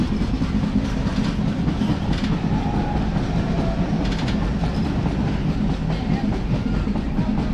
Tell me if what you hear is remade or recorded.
recorded